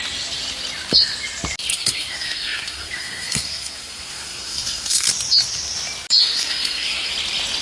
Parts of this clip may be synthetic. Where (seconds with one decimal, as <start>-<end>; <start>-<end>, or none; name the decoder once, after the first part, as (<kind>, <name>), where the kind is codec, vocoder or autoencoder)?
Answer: 1.7-5.1 (codec, SNAC); 6.2-7.1